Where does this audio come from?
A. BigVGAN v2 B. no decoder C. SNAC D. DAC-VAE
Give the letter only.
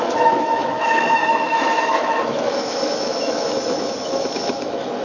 D